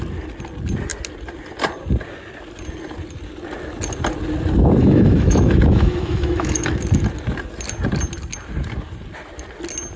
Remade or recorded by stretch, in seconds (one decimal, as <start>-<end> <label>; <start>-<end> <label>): 0.0-4.8 recorded; 4.8-6.8 remade; 6.8-10.0 recorded